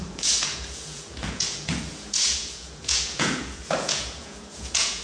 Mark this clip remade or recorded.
remade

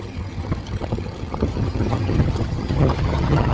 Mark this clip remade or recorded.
remade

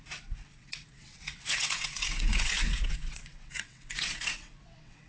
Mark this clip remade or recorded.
remade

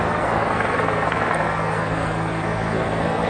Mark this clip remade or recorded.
remade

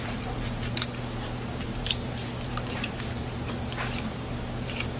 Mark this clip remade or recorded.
remade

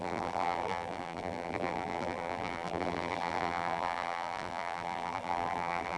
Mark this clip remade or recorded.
remade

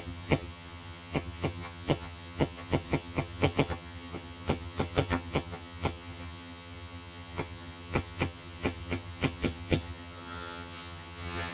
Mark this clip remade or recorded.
remade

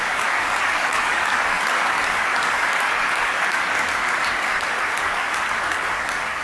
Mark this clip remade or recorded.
remade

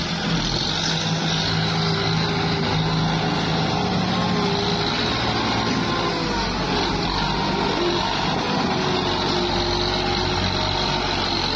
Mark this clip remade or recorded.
recorded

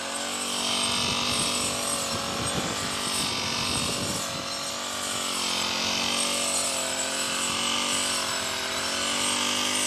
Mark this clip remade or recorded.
recorded